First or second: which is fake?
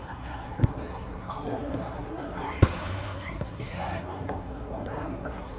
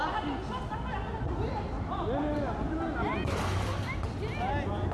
first